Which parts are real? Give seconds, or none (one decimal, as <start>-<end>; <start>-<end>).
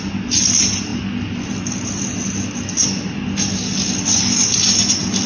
0.0-5.3